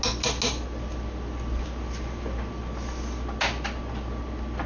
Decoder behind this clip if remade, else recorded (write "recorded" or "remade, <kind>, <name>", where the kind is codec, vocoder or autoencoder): recorded